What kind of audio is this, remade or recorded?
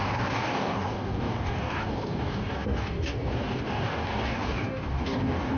remade